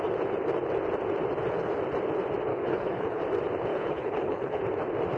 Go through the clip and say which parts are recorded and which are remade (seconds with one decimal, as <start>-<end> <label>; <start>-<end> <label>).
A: 0.0-2.5 recorded; 2.5-3.2 remade; 3.2-3.7 recorded; 3.7-4.6 remade; 4.6-5.2 recorded